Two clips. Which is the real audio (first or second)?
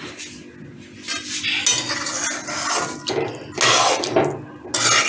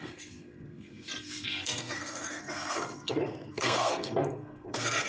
first